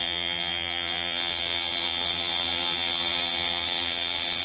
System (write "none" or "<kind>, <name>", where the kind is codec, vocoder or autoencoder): vocoder, BigVGAN v2